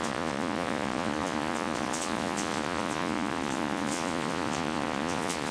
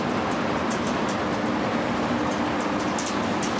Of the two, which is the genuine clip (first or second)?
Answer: second